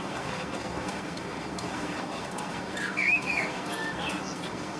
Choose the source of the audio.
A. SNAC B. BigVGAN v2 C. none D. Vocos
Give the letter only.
A